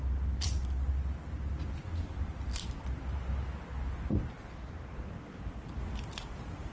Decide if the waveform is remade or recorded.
recorded